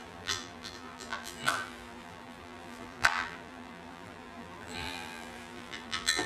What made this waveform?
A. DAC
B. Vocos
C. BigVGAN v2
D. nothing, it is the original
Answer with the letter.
C